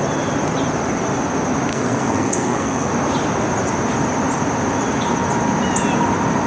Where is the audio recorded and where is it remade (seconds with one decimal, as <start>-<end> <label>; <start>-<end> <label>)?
0.0-1.7 recorded; 1.7-2.9 remade; 2.9-6.5 recorded